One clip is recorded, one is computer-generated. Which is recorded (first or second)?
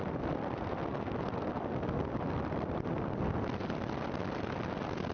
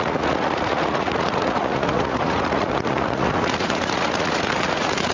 first